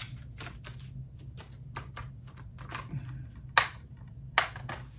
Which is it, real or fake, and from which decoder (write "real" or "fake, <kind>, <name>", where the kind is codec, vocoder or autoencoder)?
real